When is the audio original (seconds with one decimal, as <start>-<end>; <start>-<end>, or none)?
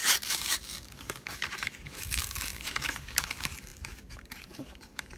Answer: none